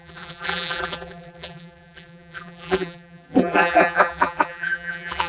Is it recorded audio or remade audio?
remade